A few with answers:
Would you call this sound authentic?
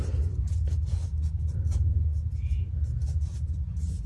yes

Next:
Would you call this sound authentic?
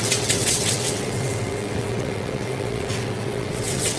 no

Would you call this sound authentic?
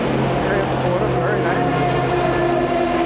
yes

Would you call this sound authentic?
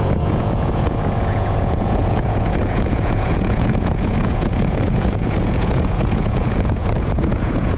no